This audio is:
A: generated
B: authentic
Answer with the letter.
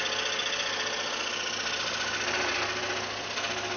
B